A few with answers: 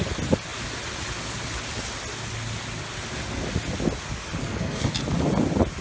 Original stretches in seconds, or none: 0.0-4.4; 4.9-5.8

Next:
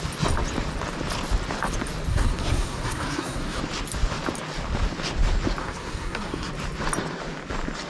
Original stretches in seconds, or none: 0.0-2.1; 3.6-5.6; 6.5-7.9

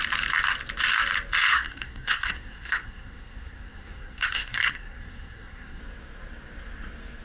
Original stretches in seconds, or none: 0.0-1.5; 5.8-7.2

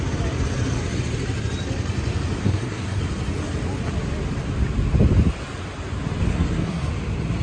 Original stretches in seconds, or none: 0.0-2.4; 3.0-6.3; 6.9-7.4

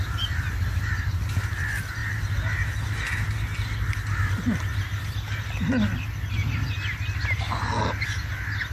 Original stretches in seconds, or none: 0.0-8.7